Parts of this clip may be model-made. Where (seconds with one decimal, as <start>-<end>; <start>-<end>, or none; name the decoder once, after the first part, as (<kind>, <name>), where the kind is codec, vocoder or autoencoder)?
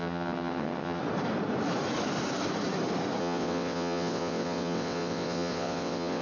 0.0-1.0 (vocoder, WaveNeXt); 3.2-6.2